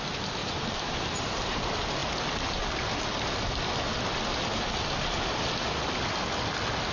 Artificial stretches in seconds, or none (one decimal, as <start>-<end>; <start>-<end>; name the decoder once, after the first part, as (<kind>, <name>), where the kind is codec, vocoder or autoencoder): 0.4-1.6 (vocoder, BigVGAN v2)